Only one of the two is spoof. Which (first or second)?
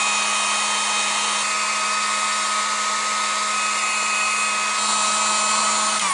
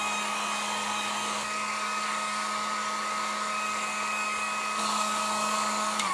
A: second